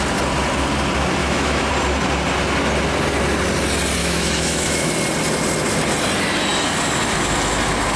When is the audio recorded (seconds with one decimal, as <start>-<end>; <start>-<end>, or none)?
0.0-1.2; 1.7-4.0; 4.9-8.0

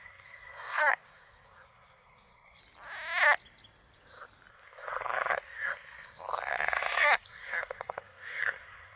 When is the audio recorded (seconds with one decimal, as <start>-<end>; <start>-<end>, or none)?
2.6-4.5

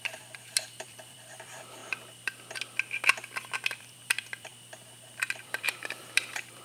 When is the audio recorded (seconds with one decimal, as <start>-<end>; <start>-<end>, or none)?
1.8-3.8; 4.5-5.3

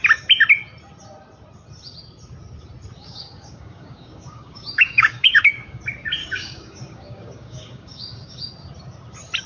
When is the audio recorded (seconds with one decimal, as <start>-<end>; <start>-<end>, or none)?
0.0-3.0; 5.8-6.2; 8.5-9.5

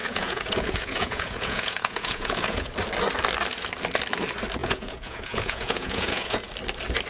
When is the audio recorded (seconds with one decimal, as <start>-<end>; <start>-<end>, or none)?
2.7-4.6; 6.5-7.1

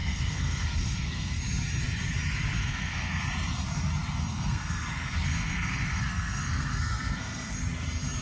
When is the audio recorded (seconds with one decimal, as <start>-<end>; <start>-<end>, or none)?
1.4-2.6; 3.2-4.3; 7.6-8.2

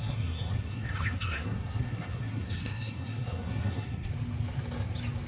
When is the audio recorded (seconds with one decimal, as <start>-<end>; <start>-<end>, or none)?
4.1-5.3

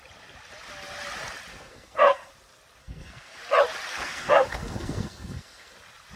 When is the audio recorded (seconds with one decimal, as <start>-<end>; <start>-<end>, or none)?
0.0-1.5; 2.3-2.8; 3.4-3.9; 5.7-6.2